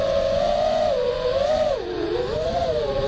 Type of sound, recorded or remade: remade